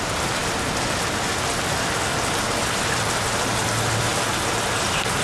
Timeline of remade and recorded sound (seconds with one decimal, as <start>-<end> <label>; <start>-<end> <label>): 0.0-5.2 recorded